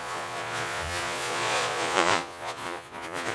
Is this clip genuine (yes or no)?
no